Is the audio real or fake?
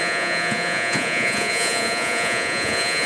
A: fake